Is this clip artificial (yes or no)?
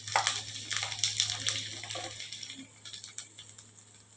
no